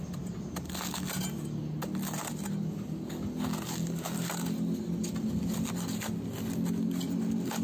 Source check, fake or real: real